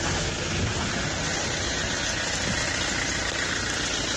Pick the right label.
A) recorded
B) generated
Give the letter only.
A